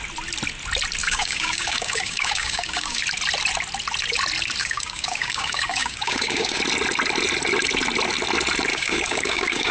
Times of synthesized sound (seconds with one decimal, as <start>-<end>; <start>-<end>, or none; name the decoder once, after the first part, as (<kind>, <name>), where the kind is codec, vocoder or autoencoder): 1.0-3.0 (codec, DAC); 4.6-6.6; 8.7-9.7